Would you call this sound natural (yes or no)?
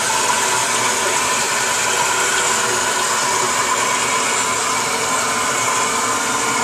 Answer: yes